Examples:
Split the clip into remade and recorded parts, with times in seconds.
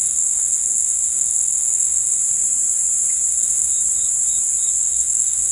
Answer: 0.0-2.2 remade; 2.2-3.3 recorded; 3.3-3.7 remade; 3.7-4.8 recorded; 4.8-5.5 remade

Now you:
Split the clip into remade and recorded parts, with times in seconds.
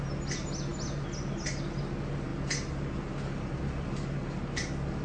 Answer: 0.0-5.0 recorded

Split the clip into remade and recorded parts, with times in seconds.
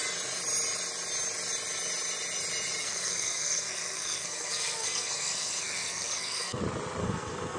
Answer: 0.0-2.8 recorded; 2.8-6.6 remade; 6.6-7.0 recorded; 7.0-7.6 remade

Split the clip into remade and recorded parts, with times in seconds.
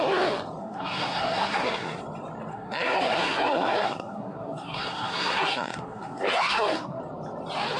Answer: 0.0-0.6 recorded; 0.6-2.0 remade; 2.0-2.5 recorded; 2.5-7.0 remade; 7.0-7.8 recorded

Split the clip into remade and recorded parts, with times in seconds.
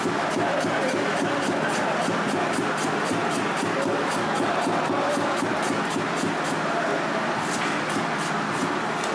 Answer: 0.0-9.1 recorded